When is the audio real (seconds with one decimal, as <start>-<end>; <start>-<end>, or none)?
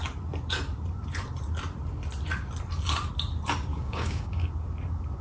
0.0-3.7; 4.5-5.2